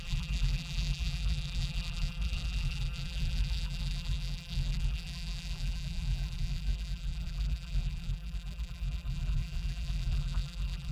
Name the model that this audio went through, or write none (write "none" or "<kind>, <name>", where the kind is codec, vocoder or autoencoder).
vocoder, BigVGAN v2